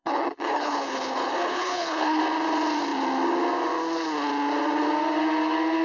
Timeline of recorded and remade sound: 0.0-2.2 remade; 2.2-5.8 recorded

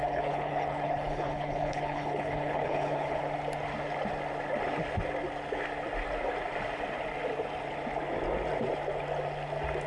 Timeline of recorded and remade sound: 0.0-3.2 remade; 3.2-9.9 recorded

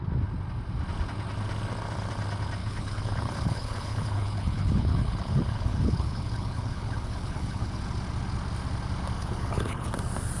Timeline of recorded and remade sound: 0.0-2.6 recorded; 2.6-7.8 remade; 7.8-9.2 recorded; 9.2-9.9 remade; 9.9-10.4 recorded

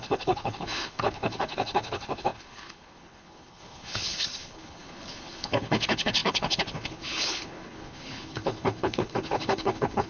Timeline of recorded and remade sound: 0.0-10.1 remade

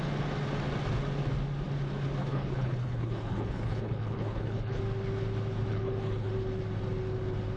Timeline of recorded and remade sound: 0.0-2.2 recorded; 2.2-4.8 remade; 4.8-5.7 recorded; 5.7-6.3 remade; 6.3-7.6 recorded